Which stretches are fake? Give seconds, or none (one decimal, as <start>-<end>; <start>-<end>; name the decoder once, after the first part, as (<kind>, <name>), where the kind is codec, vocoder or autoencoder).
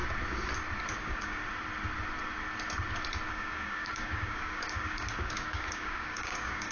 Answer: 1.0-1.4 (codec, DAC); 3.3-6.7